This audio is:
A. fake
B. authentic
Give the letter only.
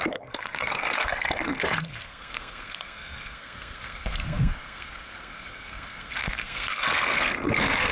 A